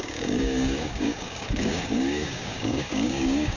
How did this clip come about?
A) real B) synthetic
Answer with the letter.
B